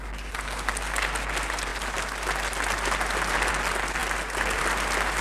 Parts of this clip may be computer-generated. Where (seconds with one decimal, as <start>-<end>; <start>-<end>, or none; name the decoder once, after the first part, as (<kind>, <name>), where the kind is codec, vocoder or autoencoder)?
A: none